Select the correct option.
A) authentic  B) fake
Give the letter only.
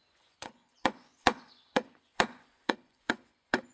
B